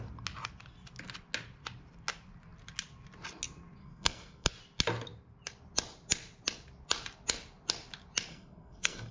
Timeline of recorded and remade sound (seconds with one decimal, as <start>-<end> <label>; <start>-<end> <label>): 0.0-3.8 recorded; 3.8-4.5 remade; 4.5-8.3 recorded; 8.3-9.1 remade